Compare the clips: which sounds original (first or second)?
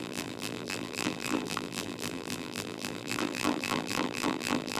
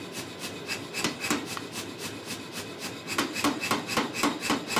second